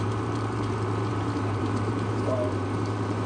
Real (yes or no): no